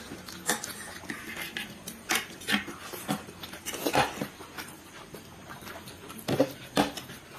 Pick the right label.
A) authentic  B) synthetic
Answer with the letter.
A